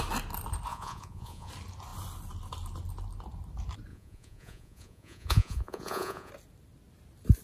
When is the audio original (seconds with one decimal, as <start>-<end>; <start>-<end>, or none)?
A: 0.0-0.7; 1.5-3.9; 6.3-7.4